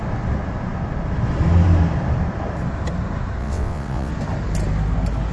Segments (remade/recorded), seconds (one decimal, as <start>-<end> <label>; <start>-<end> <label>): 0.0-3.4 recorded; 3.4-4.1 remade; 4.1-5.3 recorded